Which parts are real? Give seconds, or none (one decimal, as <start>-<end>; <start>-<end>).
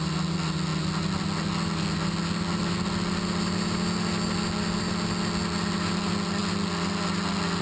0.0-7.6